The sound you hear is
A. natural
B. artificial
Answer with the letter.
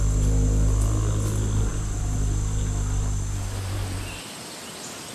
A